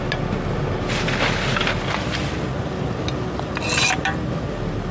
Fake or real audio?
real